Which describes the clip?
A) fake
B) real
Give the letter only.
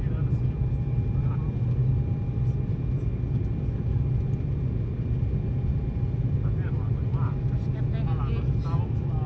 B